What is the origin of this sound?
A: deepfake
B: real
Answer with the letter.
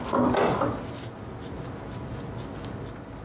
B